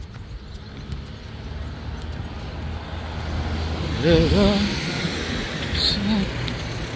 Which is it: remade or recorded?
recorded